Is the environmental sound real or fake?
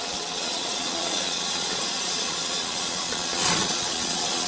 fake